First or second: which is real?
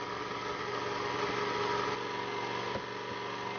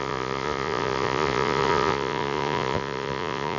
first